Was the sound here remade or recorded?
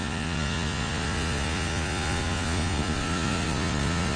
remade